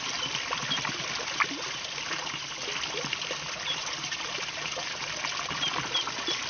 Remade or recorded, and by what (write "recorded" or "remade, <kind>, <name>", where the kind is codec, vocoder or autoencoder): recorded